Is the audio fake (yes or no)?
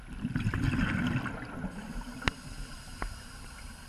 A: no